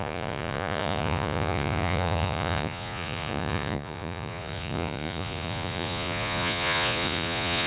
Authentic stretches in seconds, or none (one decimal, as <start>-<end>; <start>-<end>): none